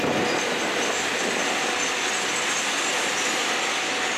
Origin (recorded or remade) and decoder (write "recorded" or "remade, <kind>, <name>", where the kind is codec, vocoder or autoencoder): recorded